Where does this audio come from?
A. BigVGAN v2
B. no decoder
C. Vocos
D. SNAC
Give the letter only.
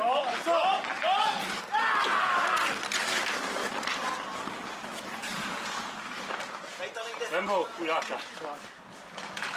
B